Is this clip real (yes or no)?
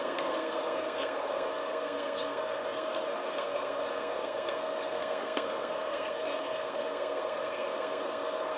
no